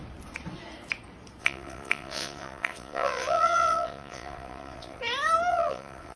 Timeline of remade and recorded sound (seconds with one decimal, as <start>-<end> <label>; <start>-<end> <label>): 0.0-1.4 recorded; 1.4-5.0 remade; 5.0-5.5 recorded; 5.5-6.2 remade